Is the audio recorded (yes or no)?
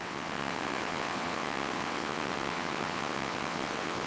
no